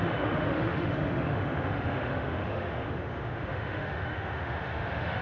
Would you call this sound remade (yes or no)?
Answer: yes